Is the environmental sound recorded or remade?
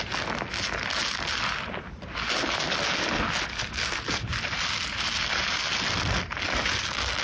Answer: recorded